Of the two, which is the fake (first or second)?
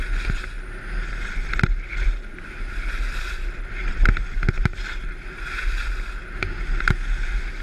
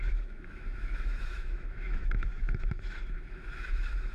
second